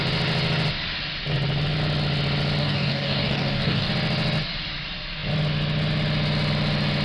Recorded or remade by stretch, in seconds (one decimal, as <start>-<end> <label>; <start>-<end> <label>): 0.0-2.6 recorded; 2.6-3.9 remade; 3.9-7.0 recorded